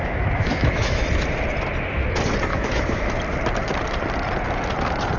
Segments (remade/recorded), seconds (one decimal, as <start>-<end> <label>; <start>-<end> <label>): 0.0-1.0 remade; 1.0-2.5 recorded; 2.5-3.1 remade; 3.1-5.2 recorded